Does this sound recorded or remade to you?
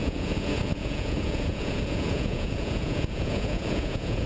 remade